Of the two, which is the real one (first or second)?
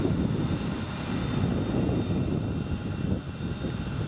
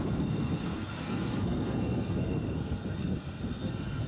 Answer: first